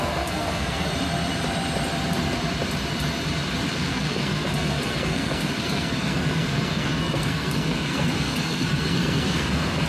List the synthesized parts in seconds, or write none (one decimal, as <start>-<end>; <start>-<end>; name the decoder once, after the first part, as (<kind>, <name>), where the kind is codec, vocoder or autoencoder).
0.0-0.9 (codec, SNAC); 3.7-9.9